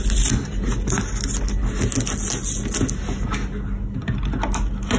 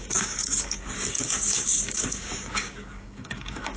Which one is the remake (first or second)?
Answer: second